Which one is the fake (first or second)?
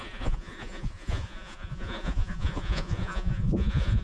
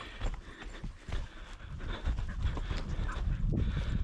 first